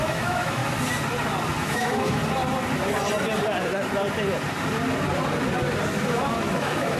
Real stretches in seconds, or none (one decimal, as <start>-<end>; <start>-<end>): 0.6-1.6; 2.2-6.0